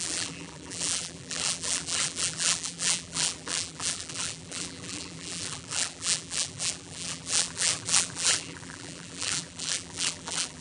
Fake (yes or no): yes